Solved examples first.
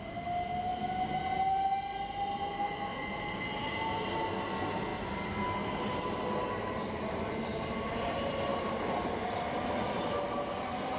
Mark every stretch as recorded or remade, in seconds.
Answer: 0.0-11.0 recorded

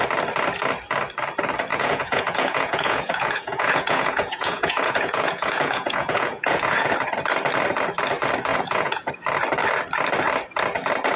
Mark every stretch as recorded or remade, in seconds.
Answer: 0.0-1.7 recorded; 1.7-6.9 remade; 6.9-8.5 recorded; 8.5-9.1 remade; 9.1-11.2 recorded

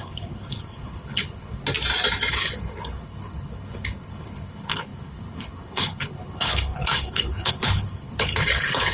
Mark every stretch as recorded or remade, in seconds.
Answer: 0.0-1.6 remade; 1.6-2.3 recorded; 2.3-8.9 remade

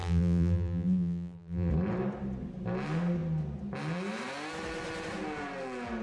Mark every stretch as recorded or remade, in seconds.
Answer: 0.0-1.7 remade; 1.7-6.0 recorded